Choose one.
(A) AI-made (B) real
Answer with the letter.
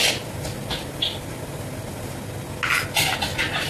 B